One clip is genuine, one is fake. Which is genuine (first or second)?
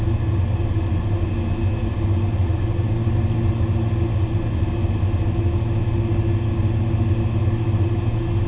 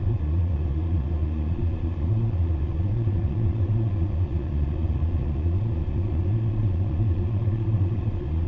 first